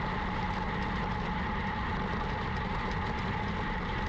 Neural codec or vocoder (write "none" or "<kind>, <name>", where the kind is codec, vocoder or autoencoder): none